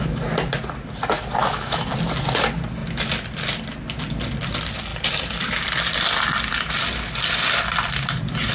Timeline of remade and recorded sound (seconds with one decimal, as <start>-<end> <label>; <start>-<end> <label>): 0.0-1.4 recorded; 1.4-1.9 remade; 1.9-8.5 recorded